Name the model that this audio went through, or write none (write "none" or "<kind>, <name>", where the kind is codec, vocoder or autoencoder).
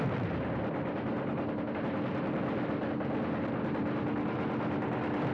none